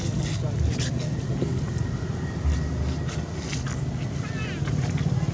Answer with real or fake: real